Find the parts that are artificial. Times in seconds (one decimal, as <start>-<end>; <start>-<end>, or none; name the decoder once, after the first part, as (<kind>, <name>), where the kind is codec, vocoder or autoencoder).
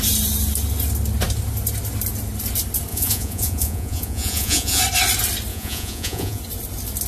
2.9-4.8 (vocoder, Vocos); 5.5-6.4